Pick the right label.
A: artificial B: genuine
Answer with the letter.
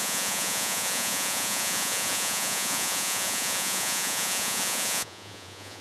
A